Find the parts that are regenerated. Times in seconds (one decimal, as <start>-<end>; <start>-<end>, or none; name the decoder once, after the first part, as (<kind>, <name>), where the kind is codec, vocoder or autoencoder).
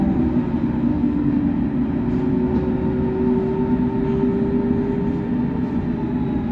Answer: 0.9-1.4 (codec, SNAC)